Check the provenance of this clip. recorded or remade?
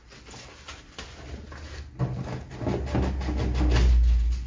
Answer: recorded